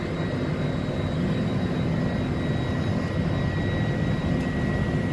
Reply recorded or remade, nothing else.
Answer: recorded